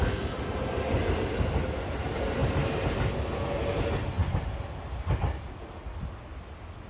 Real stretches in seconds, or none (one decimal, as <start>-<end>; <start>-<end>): 0.0-6.9